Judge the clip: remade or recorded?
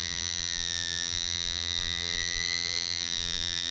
remade